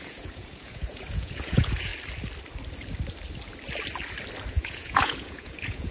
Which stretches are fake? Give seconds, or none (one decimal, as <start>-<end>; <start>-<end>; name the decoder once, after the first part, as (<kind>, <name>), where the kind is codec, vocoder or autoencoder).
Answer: 0.0-1.9 (vocoder, Vocos); 4.5-5.9